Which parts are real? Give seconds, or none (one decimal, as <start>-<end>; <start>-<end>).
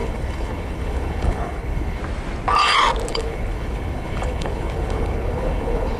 2.0-3.1